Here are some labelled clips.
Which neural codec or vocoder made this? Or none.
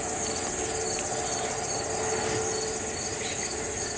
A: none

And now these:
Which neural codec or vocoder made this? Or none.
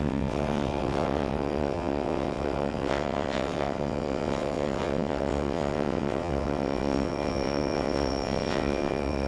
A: vocoder, WaveNeXt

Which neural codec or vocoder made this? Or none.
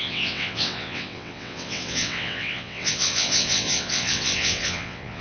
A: vocoder, WaveNeXt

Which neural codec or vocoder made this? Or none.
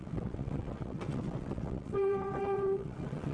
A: vocoder, WaveNeXt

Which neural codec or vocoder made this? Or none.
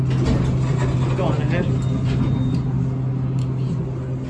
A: none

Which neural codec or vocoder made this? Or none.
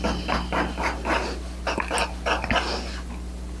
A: none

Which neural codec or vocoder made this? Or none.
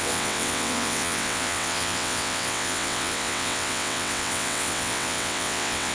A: vocoder, WaveNeXt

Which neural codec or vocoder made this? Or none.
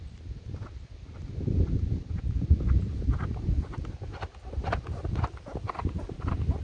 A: none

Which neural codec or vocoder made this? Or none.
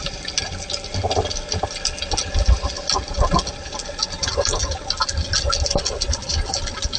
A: none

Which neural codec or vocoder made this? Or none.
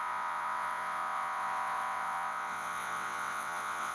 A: vocoder, WaveNeXt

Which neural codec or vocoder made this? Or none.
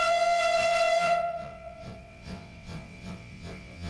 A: vocoder, WaveNeXt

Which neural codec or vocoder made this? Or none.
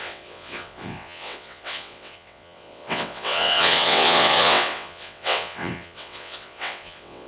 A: vocoder, WaveNeXt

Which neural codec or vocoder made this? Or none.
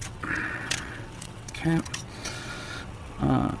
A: vocoder, WaveNeXt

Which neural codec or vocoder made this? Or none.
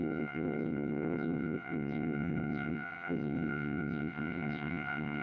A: vocoder, WaveNeXt